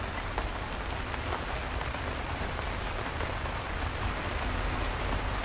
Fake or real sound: real